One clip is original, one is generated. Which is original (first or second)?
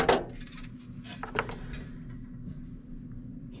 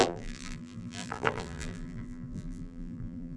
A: first